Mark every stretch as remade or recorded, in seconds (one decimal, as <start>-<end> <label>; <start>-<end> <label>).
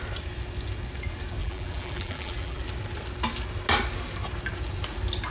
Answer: 0.0-1.4 recorded; 1.4-2.6 remade; 2.6-5.3 recorded